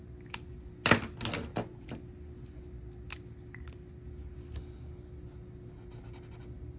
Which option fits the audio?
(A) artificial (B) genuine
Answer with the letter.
B